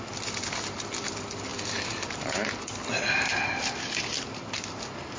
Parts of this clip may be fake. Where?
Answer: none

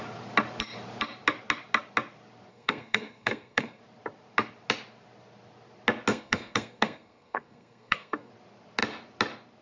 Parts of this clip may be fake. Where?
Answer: 2.5-3.8 (codec, SNAC); 6.1-8.3